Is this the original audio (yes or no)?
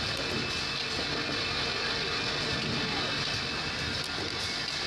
yes